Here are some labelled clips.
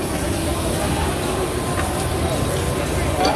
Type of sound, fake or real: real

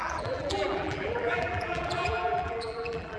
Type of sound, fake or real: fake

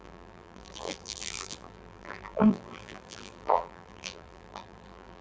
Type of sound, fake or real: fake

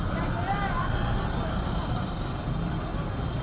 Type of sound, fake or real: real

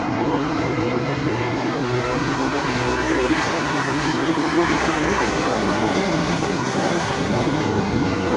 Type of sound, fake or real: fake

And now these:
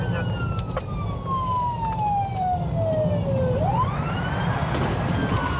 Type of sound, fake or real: real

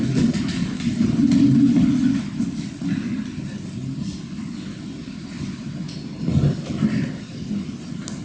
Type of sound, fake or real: real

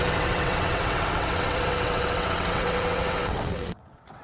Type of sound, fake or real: fake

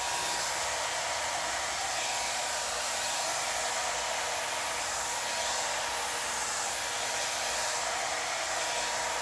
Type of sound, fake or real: real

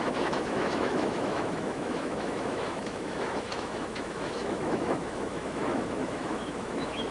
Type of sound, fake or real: fake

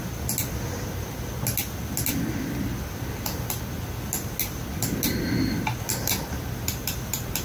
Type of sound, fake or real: real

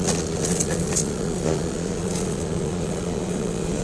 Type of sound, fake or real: fake